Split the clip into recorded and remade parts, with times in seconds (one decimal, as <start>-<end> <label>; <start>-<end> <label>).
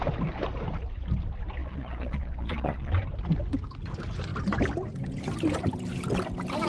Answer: 0.0-1.6 recorded; 1.6-2.9 remade; 2.9-6.7 recorded